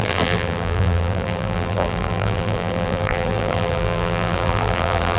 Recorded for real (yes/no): no